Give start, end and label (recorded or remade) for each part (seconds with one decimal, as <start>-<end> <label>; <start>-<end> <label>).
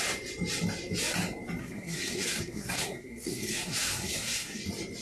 0.0-1.6 recorded; 1.6-4.6 remade; 4.6-5.0 recorded